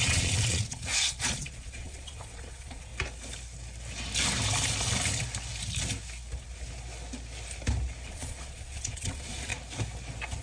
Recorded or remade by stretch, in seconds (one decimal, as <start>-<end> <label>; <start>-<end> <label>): 0.0-2.9 remade; 2.9-8.1 recorded; 8.1-9.5 remade; 9.5-10.4 recorded